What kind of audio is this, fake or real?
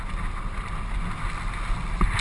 real